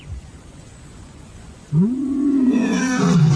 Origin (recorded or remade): remade